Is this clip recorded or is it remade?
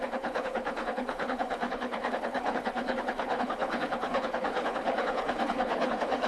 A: remade